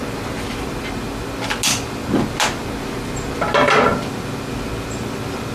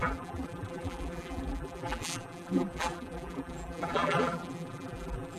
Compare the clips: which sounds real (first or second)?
first